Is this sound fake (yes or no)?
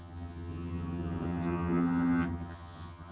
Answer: yes